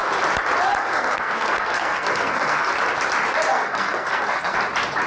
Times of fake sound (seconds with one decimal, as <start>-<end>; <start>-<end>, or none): 0.8-2.7; 3.5-4.6